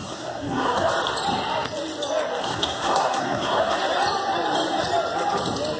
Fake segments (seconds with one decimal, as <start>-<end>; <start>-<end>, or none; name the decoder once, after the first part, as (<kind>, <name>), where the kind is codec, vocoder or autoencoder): 0.0-0.9 (codec, SNAC); 2.4-3.8

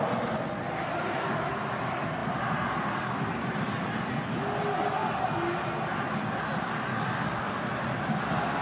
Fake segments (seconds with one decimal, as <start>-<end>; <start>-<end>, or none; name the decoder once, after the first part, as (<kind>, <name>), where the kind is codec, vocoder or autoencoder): 6.9-7.5 (codec, DAC)

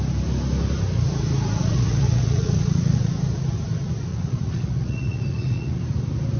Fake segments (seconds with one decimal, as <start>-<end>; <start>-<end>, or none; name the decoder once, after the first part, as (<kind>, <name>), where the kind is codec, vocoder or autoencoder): 1.6-3.1 (vocoder, Vocos); 4.1-5.8

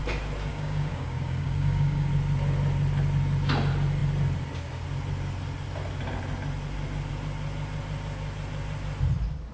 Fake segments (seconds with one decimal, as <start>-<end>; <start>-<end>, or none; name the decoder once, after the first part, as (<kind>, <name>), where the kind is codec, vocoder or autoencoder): 0.5-2.1 (codec, DAC)

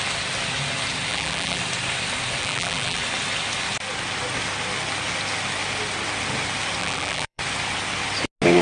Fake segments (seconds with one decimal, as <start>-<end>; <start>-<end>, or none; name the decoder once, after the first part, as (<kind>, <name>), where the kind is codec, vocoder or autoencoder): 1.1-1.6 (vocoder, BigVGAN v2); 2.4-3.0; 6.8-7.4

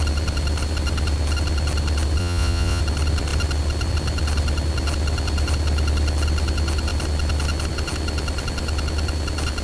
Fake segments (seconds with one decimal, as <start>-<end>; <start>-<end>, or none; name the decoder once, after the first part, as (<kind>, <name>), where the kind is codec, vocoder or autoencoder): 2.2-2.8 (vocoder, Vocos)

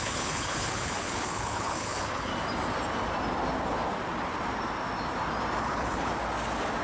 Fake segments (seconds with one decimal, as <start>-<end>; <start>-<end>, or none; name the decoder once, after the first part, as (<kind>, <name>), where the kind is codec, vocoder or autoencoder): 0.0-2.3 (codec, HILCodec); 5.6-6.1